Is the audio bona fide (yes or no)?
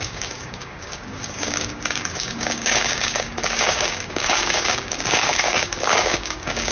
no